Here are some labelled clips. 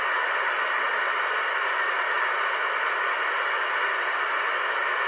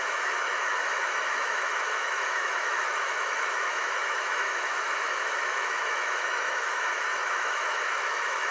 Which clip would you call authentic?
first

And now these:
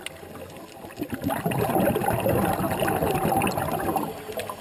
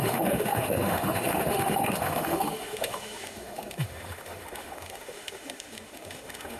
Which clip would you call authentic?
first